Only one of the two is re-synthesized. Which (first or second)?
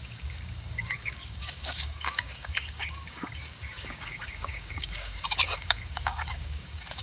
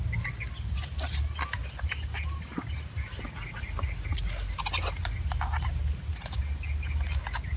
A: first